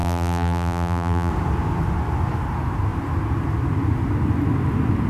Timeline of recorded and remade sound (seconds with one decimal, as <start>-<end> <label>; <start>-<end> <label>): 0.0-1.3 remade; 1.3-5.1 recorded